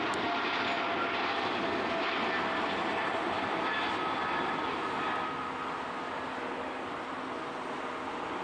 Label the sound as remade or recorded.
recorded